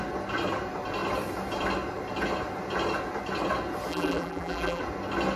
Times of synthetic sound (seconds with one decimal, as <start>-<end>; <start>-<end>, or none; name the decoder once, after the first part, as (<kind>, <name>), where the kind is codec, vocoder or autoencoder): 3.9-4.8 (vocoder, BigVGAN v2)